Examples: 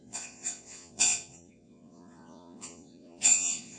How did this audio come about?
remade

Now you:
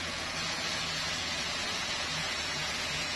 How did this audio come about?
remade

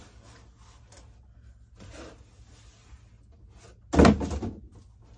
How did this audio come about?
recorded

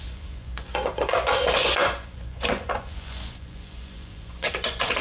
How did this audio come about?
remade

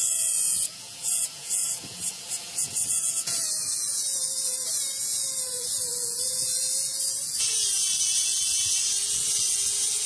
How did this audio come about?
remade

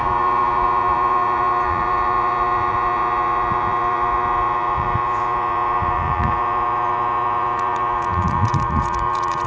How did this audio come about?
remade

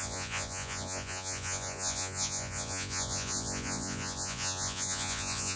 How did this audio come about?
remade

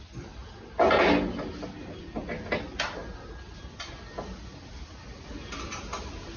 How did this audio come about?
recorded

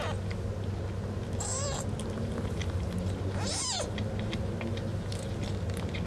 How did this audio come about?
recorded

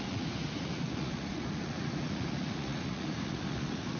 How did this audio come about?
remade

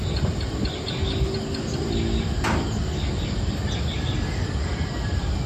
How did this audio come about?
recorded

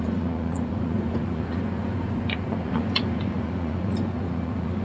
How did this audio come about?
remade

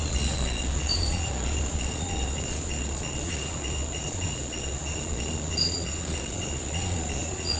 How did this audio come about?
remade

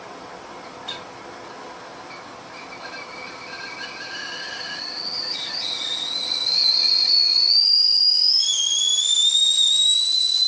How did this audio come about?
recorded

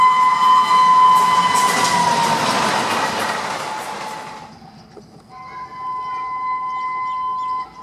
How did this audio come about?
recorded